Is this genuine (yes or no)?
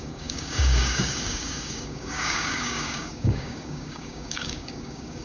no